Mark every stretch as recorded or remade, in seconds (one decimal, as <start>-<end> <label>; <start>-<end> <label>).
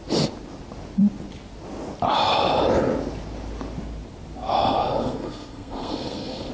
0.0-5.0 recorded; 5.0-6.5 remade